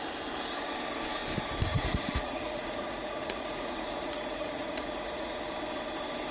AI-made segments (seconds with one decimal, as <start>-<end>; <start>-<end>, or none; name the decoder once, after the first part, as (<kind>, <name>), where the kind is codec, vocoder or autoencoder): 1.7-5.5 (vocoder, Vocos)